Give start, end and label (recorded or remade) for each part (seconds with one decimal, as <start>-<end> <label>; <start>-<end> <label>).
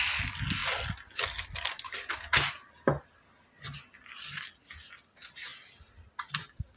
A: 0.0-6.8 recorded